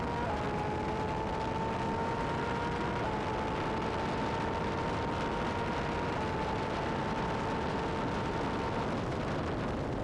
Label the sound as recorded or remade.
recorded